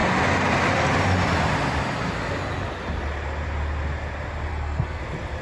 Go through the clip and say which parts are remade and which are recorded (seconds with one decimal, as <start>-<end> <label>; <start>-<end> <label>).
0.0-4.5 recorded; 4.5-5.0 remade; 5.0-5.4 recorded